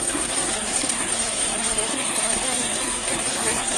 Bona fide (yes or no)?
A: no